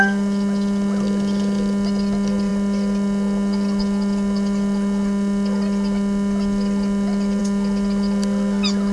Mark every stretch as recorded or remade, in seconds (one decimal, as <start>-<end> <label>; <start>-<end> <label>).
0.0-8.9 recorded